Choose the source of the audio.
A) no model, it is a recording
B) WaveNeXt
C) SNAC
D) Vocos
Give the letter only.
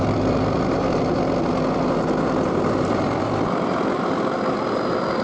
A